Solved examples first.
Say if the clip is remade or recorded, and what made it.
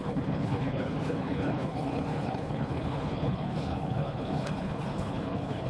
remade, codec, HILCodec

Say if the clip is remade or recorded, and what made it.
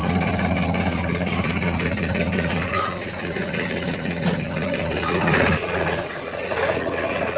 remade, vocoder, Vocos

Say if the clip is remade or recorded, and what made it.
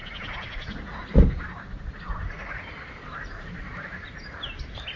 recorded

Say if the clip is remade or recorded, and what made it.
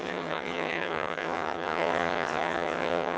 remade, vocoder, HiFi-GAN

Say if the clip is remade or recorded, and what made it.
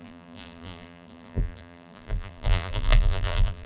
remade, vocoder, BigVGAN v2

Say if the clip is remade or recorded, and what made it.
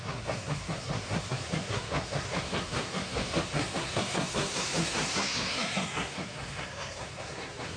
remade, codec, SNAC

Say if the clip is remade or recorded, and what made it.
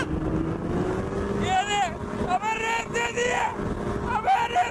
recorded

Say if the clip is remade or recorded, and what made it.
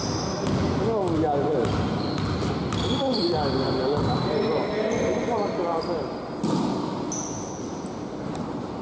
recorded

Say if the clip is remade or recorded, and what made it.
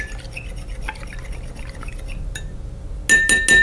recorded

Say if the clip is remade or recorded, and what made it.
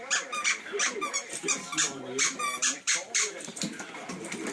remade, vocoder, BigVGAN v2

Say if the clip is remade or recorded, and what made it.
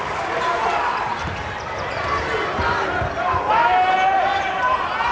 recorded